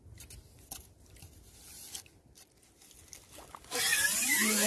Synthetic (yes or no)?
no